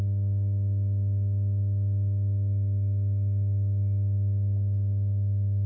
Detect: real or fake real